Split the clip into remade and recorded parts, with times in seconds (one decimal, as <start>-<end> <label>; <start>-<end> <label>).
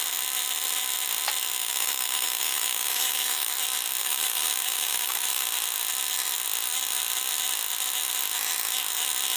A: 0.0-1.6 recorded; 1.6-3.5 remade; 3.5-4.0 recorded; 4.0-5.5 remade; 5.5-9.4 recorded